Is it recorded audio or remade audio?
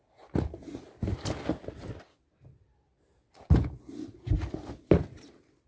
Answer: recorded